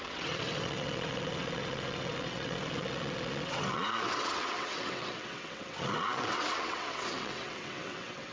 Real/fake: fake